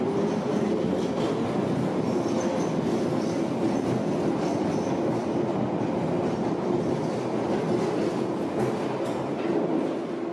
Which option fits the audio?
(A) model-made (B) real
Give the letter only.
B